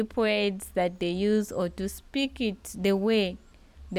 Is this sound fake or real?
fake